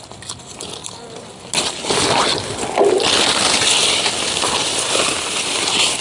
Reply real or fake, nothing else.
real